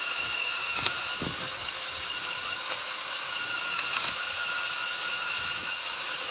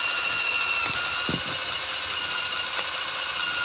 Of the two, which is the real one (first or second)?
second